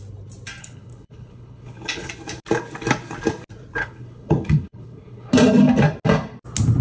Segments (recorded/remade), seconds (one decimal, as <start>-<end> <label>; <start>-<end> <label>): 0.0-0.6 recorded; 0.6-2.1 remade; 2.1-3.8 recorded; 3.8-5.3 remade; 5.3-6.8 recorded